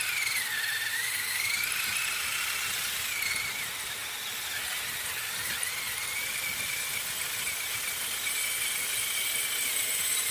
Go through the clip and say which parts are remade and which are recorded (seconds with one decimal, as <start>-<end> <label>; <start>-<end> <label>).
0.0-0.9 recorded; 0.9-1.5 remade; 1.5-10.3 recorded